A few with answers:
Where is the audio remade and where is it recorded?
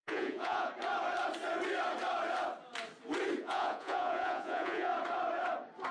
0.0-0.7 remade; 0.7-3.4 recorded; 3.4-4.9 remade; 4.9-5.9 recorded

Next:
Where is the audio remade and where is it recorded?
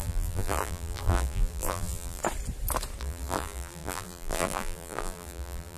0.0-2.2 remade; 2.2-3.0 recorded; 3.0-5.8 remade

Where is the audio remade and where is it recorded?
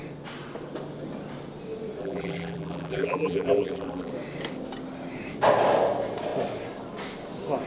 0.0-2.0 recorded; 2.0-4.1 remade; 4.1-7.7 recorded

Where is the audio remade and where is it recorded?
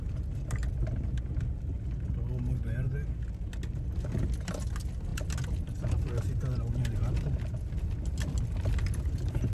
0.0-9.5 recorded